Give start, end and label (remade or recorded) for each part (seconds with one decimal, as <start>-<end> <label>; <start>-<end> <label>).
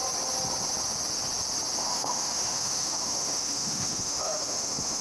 0.0-1.8 recorded; 1.8-5.0 remade